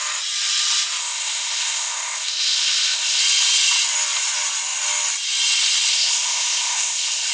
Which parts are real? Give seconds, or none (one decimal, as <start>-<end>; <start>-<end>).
0.0-1.0; 3.2-5.9